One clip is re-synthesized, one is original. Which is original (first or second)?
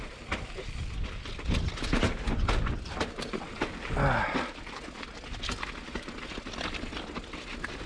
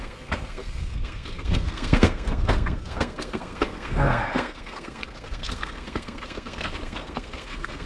first